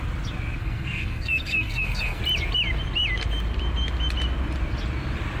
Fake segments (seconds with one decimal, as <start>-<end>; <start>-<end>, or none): 0.6-2.2